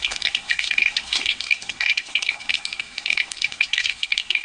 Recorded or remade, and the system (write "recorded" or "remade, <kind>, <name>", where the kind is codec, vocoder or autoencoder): remade, codec, SNAC